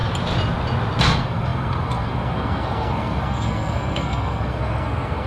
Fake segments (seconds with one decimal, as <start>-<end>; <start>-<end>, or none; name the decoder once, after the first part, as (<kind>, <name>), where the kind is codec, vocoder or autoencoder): 1.0-5.3 (codec, SNAC)